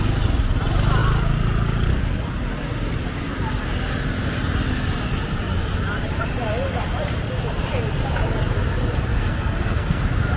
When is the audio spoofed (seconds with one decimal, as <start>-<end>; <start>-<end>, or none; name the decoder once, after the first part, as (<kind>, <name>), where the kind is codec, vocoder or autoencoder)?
9.1-10.0 (codec, SNAC)